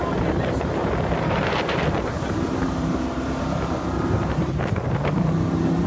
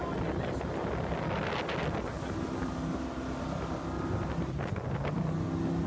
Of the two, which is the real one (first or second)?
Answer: second